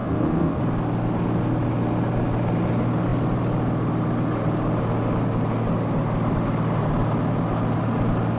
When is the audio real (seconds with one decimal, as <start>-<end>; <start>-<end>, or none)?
0.6-8.4